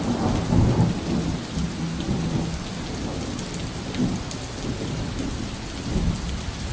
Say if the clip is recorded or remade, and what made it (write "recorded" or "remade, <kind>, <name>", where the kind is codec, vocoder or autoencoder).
recorded